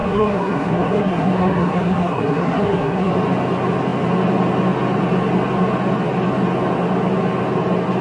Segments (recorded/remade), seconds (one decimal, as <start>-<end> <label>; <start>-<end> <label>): 0.0-3.1 remade; 3.1-8.0 recorded